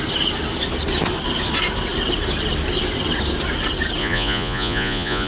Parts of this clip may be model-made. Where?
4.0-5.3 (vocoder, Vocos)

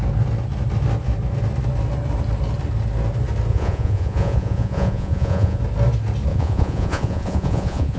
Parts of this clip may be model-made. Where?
3.5-5.6 (vocoder, Vocos); 6.3-8.0

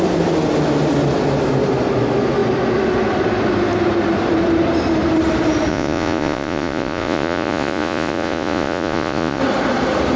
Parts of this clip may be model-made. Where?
5.7-9.4 (vocoder, Vocos)

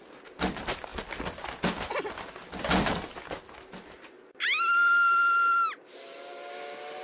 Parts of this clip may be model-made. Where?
none